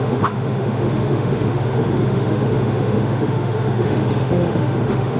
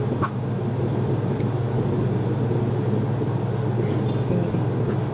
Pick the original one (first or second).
second